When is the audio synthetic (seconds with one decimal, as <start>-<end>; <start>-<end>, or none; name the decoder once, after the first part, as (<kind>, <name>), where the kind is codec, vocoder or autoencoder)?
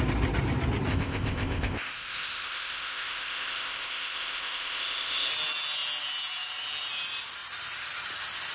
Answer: 0.9-5.3 (codec, ZipCodec)